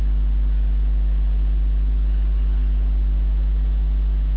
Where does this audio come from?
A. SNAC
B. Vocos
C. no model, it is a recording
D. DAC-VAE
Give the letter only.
C